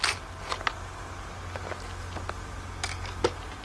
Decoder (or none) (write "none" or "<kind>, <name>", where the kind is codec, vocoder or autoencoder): none